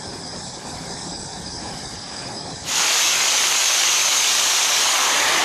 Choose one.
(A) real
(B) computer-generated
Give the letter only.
B